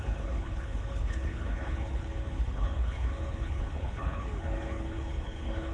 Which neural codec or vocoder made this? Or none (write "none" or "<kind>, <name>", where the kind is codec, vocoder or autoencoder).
codec, HILCodec